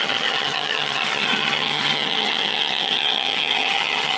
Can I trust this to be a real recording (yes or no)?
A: no